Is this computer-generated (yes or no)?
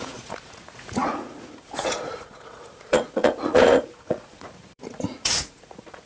yes